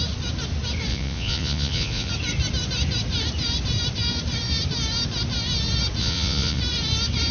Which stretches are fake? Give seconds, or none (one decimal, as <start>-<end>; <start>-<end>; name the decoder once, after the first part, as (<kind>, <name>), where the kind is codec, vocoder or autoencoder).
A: 0.9-2.1 (vocoder, Vocos); 6.0-6.6